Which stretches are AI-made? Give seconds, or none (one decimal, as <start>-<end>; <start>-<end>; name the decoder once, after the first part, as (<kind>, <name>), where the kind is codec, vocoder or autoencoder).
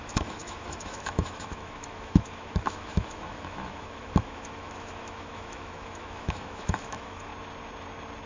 0.0-7.3 (autoencoder, DAC-VAE)